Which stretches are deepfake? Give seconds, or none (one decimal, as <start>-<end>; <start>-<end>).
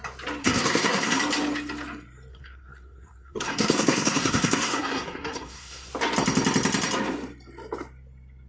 0.4-1.2; 2.3-5.9